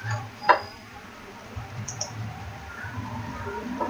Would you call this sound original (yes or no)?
no